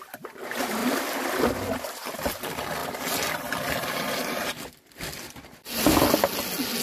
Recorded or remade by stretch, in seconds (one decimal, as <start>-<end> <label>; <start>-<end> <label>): 0.0-0.8 recorded; 0.8-1.4 remade; 1.4-2.8 recorded; 2.8-5.7 remade; 5.7-6.8 recorded